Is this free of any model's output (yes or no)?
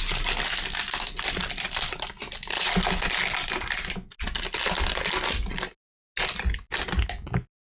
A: yes